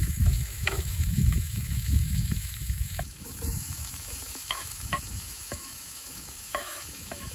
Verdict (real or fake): fake